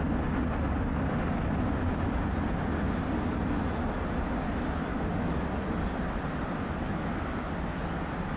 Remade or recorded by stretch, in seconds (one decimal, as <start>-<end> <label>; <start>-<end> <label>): 0.0-4.9 recorded; 4.9-5.6 remade; 5.6-8.4 recorded